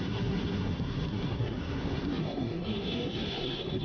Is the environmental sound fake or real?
fake